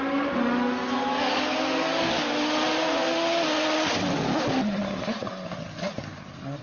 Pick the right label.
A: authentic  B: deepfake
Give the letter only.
A